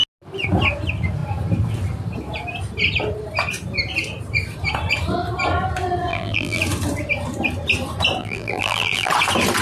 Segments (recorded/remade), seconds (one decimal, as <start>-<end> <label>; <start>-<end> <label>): 0.0-6.1 recorded; 6.1-6.6 remade; 6.6-8.2 recorded; 8.2-9.1 remade; 9.1-9.6 recorded